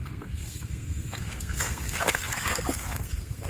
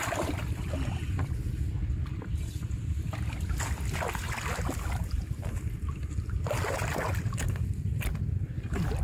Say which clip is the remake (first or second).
first